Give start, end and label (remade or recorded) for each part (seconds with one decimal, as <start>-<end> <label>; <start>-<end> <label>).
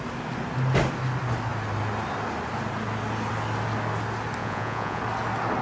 0.0-4.4 recorded; 4.4-5.0 remade; 5.0-5.6 recorded